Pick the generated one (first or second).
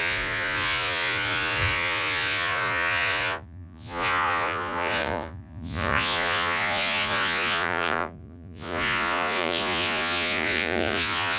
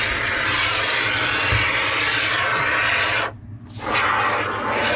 first